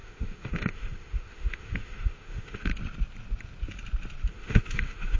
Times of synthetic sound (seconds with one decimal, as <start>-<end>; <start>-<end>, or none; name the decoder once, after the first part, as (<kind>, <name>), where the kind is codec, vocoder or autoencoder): 0.0-2.7 (autoencoder, DAC-VAE); 4.3-5.2